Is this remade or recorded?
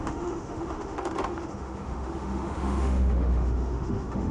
remade